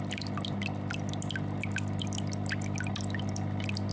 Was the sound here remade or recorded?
recorded